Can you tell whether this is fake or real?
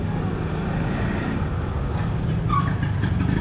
real